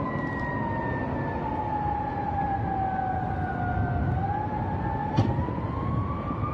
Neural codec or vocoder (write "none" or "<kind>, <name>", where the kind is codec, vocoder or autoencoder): none